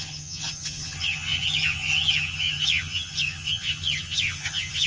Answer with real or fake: fake